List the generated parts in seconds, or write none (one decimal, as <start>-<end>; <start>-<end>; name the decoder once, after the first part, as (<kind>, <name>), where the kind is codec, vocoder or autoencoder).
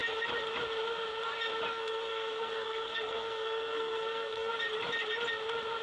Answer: 1.7-4.5 (codec, SNAC)